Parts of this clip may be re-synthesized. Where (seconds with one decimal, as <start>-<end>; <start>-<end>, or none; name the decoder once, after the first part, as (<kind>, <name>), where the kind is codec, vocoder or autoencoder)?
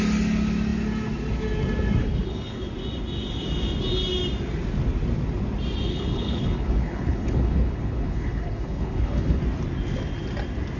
2.0-2.7 (codec, HILCodec); 5.9-9.4